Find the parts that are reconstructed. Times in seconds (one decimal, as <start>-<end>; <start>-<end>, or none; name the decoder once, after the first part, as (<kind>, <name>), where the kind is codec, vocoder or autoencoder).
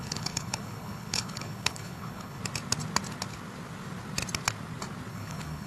0.0-2.4 (codec, HILCodec); 5.1-5.7